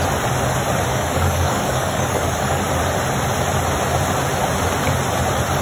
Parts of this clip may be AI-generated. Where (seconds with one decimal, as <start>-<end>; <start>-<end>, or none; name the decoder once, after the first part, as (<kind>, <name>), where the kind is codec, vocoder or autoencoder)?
0.9-2.6 (codec, DAC)